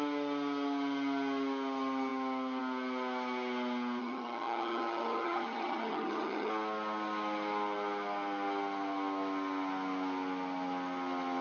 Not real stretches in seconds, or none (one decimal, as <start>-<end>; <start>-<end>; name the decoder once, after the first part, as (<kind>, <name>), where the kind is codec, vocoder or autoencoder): 4.0-6.5 (vocoder, HiFi-GAN)